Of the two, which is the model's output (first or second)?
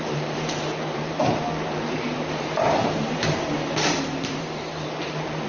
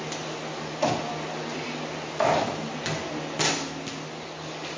first